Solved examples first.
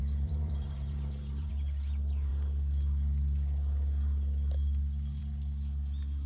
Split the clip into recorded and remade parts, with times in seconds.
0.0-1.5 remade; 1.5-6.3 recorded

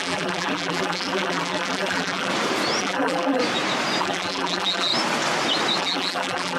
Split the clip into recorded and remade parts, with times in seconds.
0.0-2.3 remade; 2.3-2.8 recorded; 2.8-3.4 remade; 3.4-4.0 recorded; 4.0-4.9 remade; 4.9-5.8 recorded; 5.8-6.6 remade

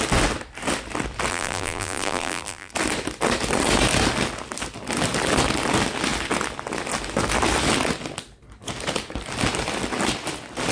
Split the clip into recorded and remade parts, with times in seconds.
0.0-1.3 recorded; 1.3-2.7 remade; 2.7-10.7 recorded

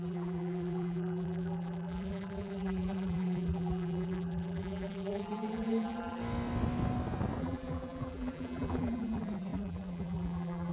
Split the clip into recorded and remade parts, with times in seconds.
0.0-6.2 remade; 6.2-7.4 recorded; 7.4-10.7 remade